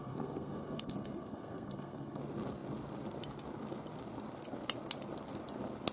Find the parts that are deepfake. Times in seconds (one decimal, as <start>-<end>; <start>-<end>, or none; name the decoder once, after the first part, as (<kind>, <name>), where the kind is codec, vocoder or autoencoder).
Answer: 0.0-2.2 (codec, SNAC)